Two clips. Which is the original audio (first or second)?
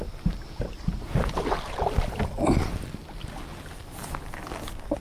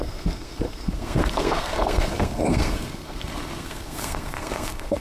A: first